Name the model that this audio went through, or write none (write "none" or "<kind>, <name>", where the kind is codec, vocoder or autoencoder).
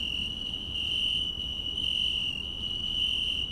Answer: none